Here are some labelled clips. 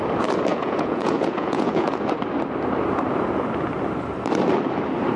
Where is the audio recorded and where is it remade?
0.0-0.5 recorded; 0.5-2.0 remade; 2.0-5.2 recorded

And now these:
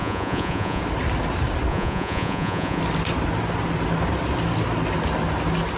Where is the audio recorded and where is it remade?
0.0-0.8 remade; 0.8-1.7 recorded; 1.7-2.8 remade; 2.8-5.8 recorded

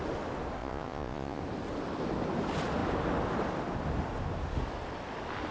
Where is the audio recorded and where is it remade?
0.0-0.6 recorded; 0.6-1.4 remade; 1.4-5.5 recorded